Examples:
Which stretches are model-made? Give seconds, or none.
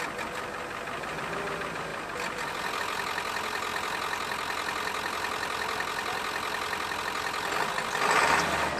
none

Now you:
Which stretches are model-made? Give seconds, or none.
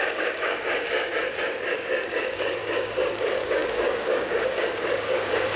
0.0-5.6 (codec, DAC)